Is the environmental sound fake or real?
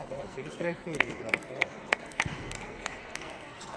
fake